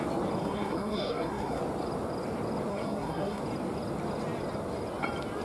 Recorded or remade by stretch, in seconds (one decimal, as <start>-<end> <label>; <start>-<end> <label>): 0.0-0.4 recorded; 0.4-1.6 remade; 1.6-2.7 recorded; 2.7-3.4 remade; 3.4-5.4 recorded